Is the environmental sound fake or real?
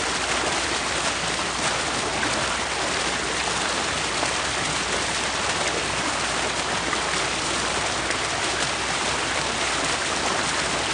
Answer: real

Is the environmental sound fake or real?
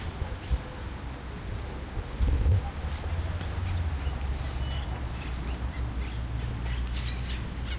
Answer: real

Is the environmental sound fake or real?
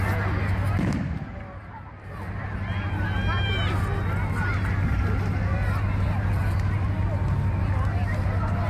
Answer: real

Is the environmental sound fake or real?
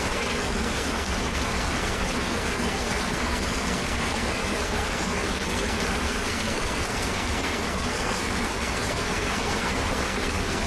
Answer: fake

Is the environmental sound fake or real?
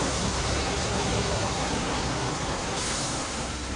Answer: fake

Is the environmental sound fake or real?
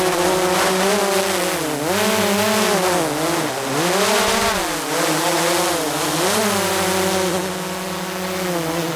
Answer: real